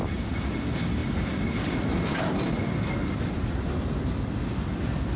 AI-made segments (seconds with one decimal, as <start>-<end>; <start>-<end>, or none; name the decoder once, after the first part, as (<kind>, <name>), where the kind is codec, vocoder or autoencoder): 1.0-3.7 (vocoder, BigVGAN v2)